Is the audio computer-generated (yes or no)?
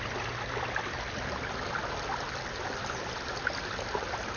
no